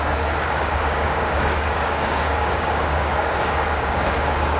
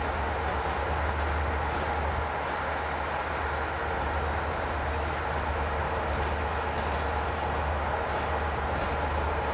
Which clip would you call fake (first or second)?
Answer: first